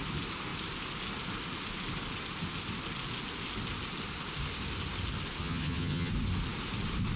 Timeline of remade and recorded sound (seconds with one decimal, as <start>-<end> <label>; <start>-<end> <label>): 0.0-5.4 recorded; 5.4-6.1 remade; 6.1-7.2 recorded